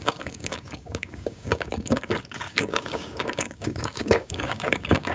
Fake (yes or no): yes